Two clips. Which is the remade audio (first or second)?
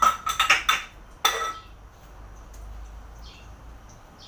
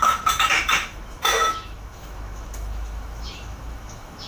second